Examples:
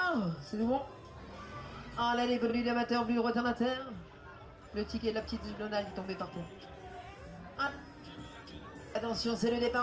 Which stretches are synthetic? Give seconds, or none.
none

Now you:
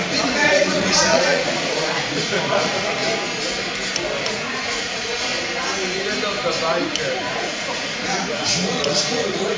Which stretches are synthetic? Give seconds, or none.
0.0-3.0 (vocoder, Vocos); 4.3-5.3; 7.3-9.6

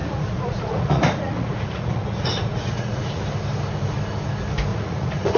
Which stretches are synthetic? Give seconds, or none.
0.0-3.2 (vocoder, Vocos); 4.7-5.4

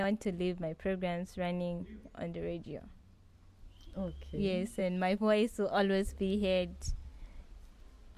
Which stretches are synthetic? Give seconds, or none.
none

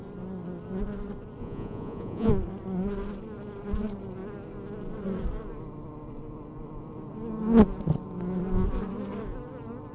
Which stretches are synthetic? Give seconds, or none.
1.4-2.3 (vocoder, Vocos)

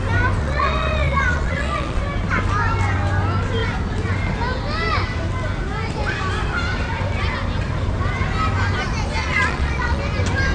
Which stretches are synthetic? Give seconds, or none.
0.4-2.0 (vocoder, Vocos); 9.2-10.0

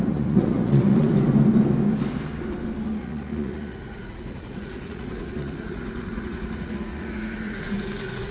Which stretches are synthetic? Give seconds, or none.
0.0-1.1 (vocoder, Vocos); 3.0-8.3